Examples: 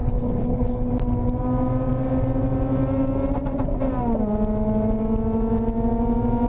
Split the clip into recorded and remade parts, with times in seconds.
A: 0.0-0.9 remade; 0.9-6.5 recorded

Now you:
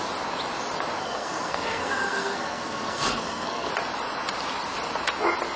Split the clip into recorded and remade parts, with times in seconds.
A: 0.0-1.0 recorded; 1.0-3.7 remade; 3.7-5.6 recorded